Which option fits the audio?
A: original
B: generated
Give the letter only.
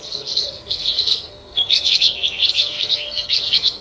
B